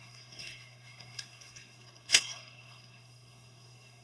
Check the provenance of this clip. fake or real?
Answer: fake